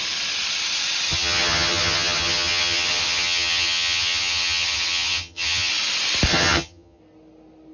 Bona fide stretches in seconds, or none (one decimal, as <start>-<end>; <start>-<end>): 0.0-1.1; 5.7-6.3; 7.0-7.7